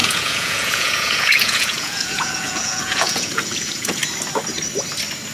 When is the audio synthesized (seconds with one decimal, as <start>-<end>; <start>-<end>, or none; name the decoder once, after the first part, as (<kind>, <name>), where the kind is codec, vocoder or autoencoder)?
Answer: 0.0-4.0 (vocoder, Vocos)